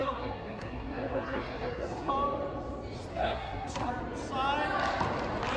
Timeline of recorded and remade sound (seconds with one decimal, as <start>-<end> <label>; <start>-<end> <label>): 0.0-2.1 remade; 2.1-3.1 recorded; 3.1-3.9 remade; 3.9-5.6 recorded